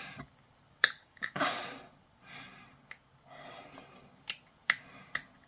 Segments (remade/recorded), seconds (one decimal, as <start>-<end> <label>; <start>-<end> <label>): 0.0-1.0 recorded; 1.0-1.6 remade; 1.6-5.5 recorded